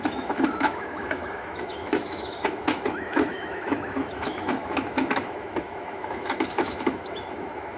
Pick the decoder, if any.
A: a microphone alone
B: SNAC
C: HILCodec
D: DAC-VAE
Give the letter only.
D